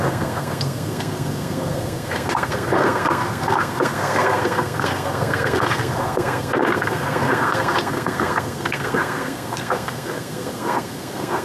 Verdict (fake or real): fake